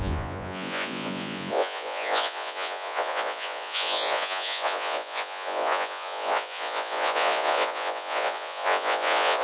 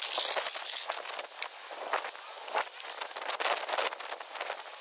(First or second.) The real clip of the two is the second